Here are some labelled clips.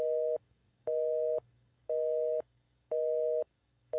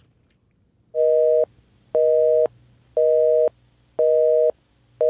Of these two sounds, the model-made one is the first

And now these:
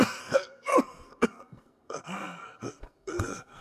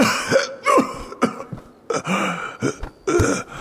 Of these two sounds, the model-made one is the first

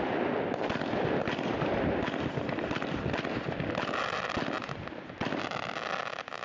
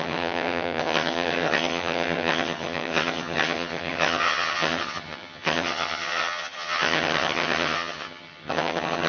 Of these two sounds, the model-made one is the second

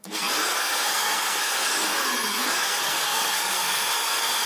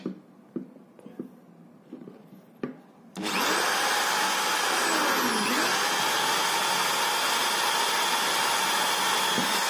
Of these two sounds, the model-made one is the first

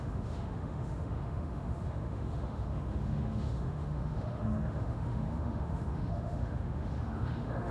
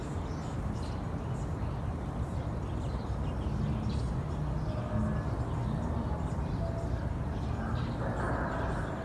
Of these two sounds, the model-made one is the first